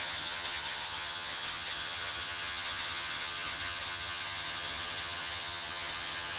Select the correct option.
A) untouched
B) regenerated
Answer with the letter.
B